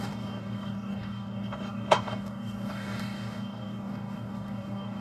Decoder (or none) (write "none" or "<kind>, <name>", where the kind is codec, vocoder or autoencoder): codec, DAC